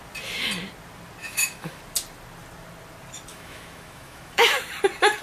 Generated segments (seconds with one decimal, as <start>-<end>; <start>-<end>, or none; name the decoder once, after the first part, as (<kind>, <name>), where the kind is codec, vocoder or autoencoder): 1.2-1.8 (autoencoder, DAC-VAE); 3.3-4.7